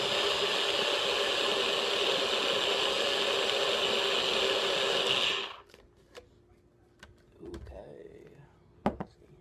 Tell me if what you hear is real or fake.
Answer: real